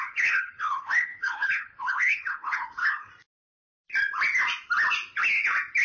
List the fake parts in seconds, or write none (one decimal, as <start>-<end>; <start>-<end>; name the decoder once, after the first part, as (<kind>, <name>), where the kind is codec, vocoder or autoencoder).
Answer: 0.0-3.1 (codec, HILCodec)